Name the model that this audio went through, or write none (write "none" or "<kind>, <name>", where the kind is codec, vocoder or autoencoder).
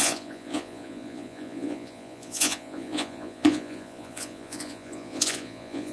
vocoder, Vocos